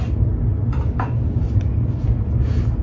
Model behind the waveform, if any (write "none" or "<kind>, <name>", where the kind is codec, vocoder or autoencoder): none